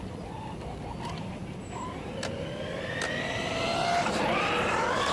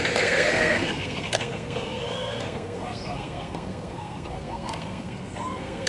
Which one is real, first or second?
first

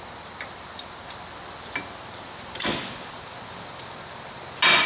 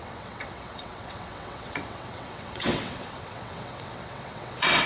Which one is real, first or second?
first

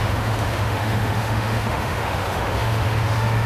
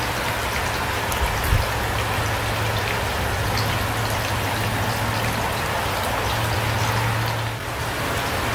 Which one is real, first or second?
second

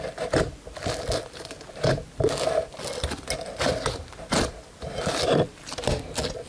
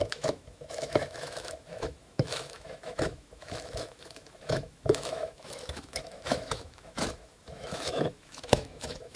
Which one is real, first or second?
first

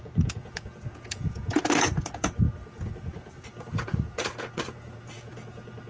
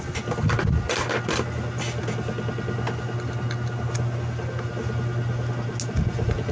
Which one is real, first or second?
second